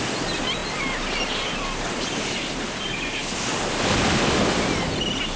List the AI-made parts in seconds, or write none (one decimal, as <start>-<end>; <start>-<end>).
none